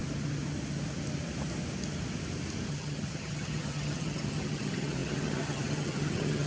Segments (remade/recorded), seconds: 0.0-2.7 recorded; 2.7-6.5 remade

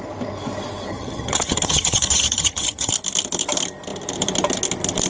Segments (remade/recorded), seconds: 0.0-0.9 recorded; 0.9-2.9 remade; 2.9-5.1 recorded

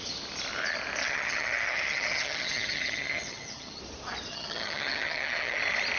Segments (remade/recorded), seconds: 0.0-1.0 recorded; 1.0-3.8 remade; 3.8-4.3 recorded; 4.3-5.6 remade; 5.6-6.0 recorded

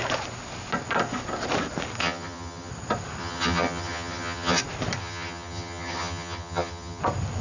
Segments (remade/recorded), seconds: 0.0-2.0 recorded; 2.0-2.7 remade; 2.7-3.2 recorded; 3.2-4.6 remade; 4.6-5.0 recorded; 5.0-7.0 remade; 7.0-7.4 recorded

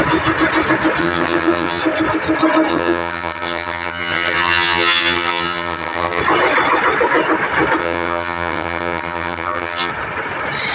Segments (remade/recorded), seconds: 0.0-1.0 recorded; 1.0-1.8 remade; 1.8-2.7 recorded; 2.7-6.2 remade; 6.2-7.8 recorded; 7.8-9.9 remade; 9.9-10.7 recorded

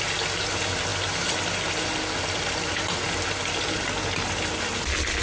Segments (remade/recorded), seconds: 0.0-5.2 recorded

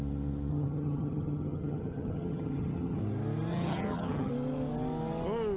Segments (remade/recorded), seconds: 0.0-0.5 recorded; 0.5-3.0 remade; 3.0-3.5 recorded; 3.5-4.3 remade; 4.3-5.6 recorded

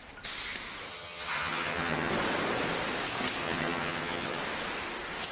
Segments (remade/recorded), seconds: 0.0-0.9 recorded; 0.9-2.1 remade; 2.1-3.4 recorded; 3.4-4.4 remade; 4.4-5.3 recorded